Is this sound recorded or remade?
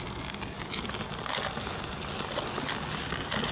recorded